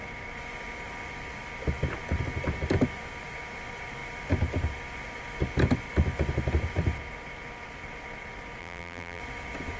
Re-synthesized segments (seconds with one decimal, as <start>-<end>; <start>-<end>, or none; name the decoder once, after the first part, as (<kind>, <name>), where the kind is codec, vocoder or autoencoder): 8.6-9.2 (vocoder, BigVGAN v2)